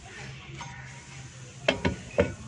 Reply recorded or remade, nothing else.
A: recorded